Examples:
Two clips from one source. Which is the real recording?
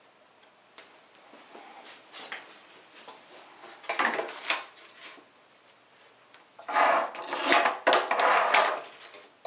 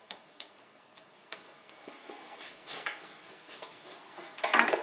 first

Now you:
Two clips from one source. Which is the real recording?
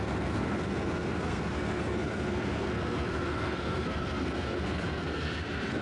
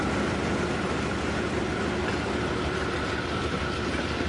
second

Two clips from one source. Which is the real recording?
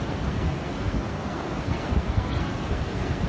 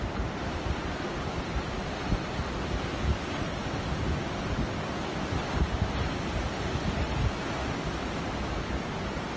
second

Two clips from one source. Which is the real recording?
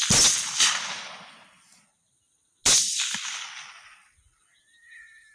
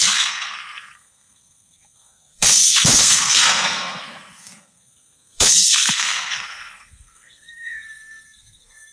first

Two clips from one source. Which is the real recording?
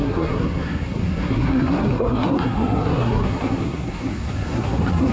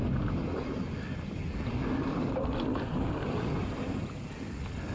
second